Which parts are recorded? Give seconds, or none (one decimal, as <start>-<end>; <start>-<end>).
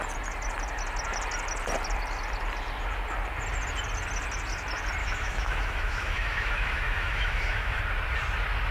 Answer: 0.0-5.0; 7.8-8.7